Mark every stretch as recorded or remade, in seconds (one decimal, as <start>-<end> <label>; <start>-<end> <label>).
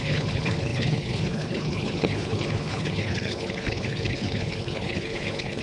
0.0-5.6 remade